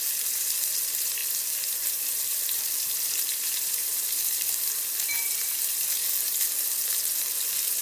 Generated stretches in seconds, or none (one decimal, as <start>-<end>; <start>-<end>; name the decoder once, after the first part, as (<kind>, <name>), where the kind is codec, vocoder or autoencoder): 0.0-6.0 (vocoder, BigVGAN v2)